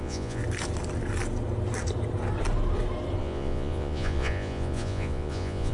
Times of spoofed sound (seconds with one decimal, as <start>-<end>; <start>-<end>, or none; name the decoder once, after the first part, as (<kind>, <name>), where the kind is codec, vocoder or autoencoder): 0.0-0.4 (vocoder, Vocos); 3.2-5.7